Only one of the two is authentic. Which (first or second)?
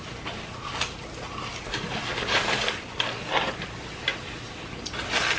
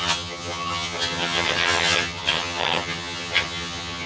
first